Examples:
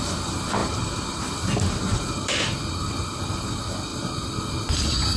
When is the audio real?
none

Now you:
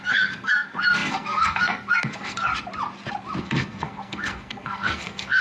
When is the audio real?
2.5-3.4

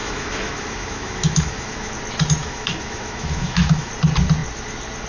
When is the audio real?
1.9-2.4; 3.9-5.1

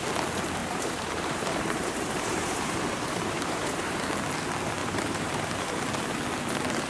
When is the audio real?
0.0-0.6; 4.0-4.8; 5.6-6.9

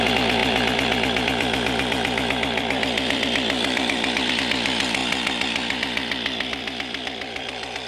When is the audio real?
0.0-0.4; 4.3-5.0